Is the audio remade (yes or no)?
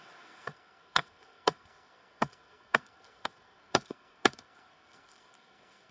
yes